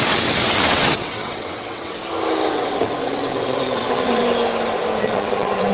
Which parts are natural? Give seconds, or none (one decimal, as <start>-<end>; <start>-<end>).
2.0-2.5; 4.2-5.0